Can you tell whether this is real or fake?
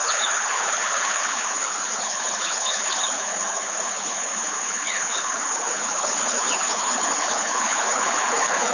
fake